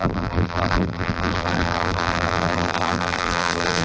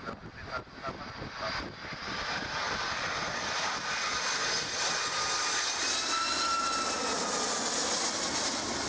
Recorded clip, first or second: second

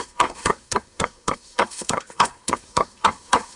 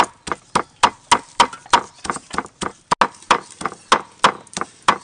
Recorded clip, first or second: second